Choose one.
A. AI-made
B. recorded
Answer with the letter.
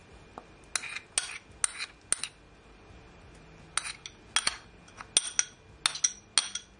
B